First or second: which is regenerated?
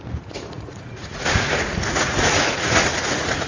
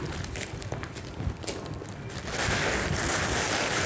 first